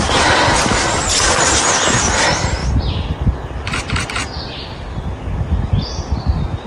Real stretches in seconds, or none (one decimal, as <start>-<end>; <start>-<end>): 2.6-6.7